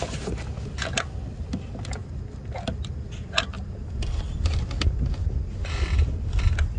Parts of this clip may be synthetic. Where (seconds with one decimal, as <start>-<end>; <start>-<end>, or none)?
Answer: none